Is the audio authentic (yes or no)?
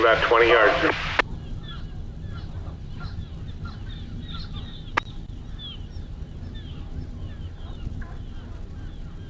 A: yes